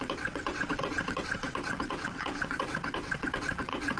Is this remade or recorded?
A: remade